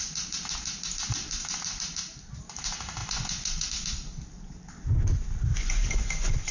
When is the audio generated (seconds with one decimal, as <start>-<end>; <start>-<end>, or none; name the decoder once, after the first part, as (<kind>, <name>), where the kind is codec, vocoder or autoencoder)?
3.0-3.7 (vocoder, Vocos); 5.5-6.5